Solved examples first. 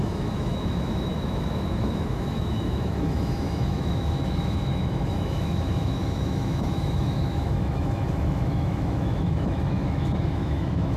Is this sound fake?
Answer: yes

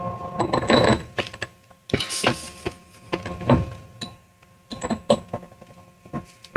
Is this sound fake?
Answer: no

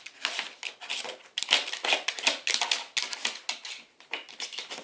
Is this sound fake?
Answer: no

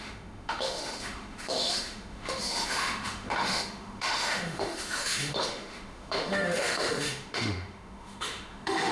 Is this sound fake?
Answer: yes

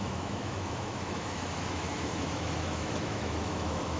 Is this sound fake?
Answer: yes